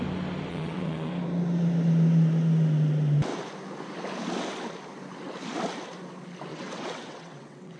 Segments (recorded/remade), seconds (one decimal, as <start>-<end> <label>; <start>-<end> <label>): 0.0-0.5 recorded; 0.5-1.1 remade; 1.1-6.5 recorded; 6.5-7.8 remade